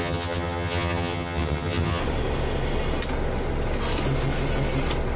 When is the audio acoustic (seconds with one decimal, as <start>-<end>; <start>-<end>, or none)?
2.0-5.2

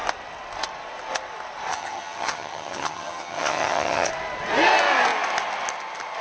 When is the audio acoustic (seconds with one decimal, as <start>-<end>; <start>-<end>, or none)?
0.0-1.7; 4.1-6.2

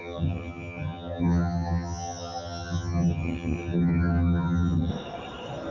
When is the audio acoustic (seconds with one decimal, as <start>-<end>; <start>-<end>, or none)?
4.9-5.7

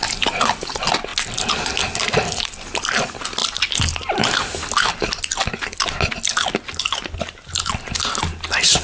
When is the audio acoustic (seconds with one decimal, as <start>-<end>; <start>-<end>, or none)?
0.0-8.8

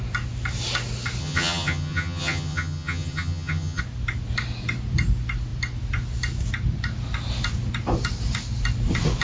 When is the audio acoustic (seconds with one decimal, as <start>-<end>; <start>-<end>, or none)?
0.0-1.2; 3.8-9.2

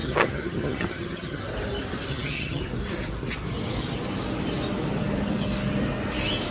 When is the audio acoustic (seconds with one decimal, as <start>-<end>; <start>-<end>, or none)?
1.4-2.1; 2.6-6.5